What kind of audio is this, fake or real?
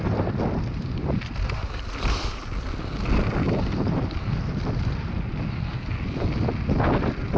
real